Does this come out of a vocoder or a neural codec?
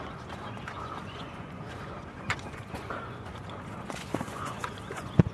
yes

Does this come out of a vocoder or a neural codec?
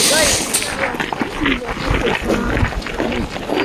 no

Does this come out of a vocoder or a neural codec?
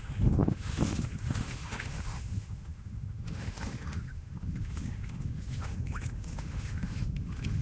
yes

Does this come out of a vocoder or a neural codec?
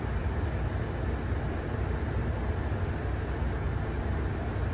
no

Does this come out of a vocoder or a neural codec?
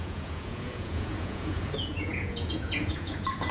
yes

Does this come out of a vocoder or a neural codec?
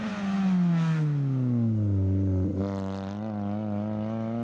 no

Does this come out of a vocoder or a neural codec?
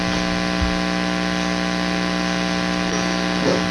no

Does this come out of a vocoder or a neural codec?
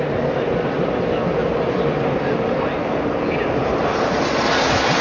no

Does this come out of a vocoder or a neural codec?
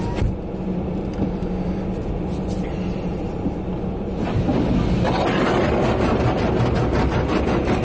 no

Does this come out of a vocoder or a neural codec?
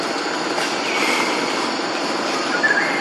no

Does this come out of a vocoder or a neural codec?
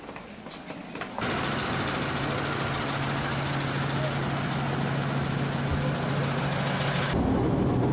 no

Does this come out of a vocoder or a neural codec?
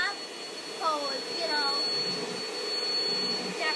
no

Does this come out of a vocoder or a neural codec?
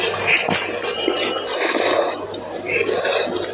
no